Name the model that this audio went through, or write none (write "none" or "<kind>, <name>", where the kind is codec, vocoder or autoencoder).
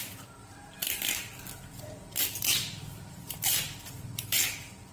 vocoder, BigVGAN v2